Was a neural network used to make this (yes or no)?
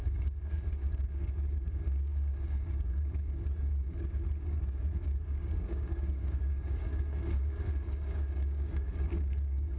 yes